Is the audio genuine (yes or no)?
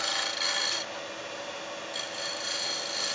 yes